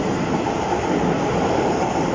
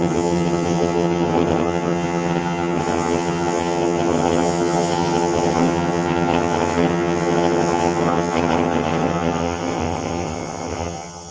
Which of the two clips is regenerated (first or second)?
second